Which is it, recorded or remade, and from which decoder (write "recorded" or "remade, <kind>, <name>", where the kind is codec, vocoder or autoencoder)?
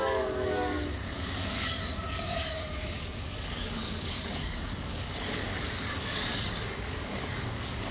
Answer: remade, codec, DAC